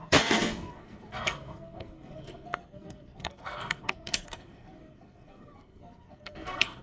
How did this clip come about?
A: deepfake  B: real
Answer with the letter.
A